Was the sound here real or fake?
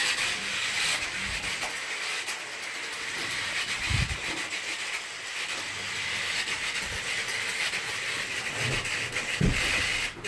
real